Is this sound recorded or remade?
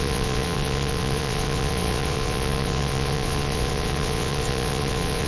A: remade